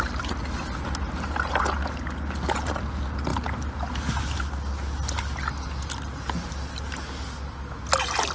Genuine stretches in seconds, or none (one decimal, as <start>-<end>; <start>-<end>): 0.0-8.3